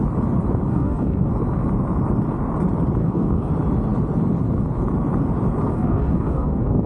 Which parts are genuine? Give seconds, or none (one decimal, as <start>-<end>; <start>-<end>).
0.0-0.7; 1.3-3.0; 3.5-5.7